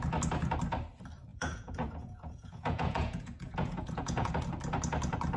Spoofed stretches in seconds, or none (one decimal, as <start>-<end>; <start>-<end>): 1.3-4.3